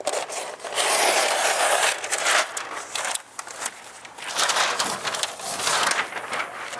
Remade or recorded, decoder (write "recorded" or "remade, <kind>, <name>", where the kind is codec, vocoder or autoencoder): recorded